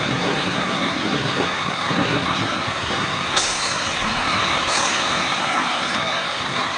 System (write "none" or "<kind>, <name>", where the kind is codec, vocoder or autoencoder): codec, SNAC